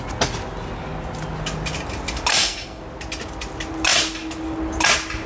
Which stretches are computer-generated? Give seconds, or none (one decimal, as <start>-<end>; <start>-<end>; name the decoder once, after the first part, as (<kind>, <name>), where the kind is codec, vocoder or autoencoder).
2.3-2.8 (codec, SNAC)

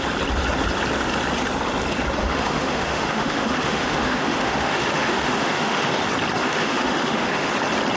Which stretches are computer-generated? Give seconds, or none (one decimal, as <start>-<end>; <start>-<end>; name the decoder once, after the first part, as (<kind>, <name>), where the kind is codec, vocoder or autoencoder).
2.2-6.0 (autoencoder, DAC-VAE); 6.4-7.5

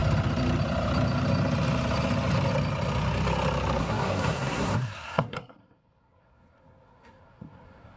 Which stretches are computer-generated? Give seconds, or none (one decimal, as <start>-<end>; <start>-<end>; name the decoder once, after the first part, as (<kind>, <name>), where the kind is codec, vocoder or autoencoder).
3.8-8.0 (codec, SNAC)